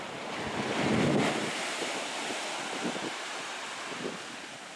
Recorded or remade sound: remade